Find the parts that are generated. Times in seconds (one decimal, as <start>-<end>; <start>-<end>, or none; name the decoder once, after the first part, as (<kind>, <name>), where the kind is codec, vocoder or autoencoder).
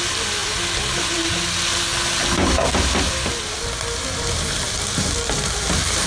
none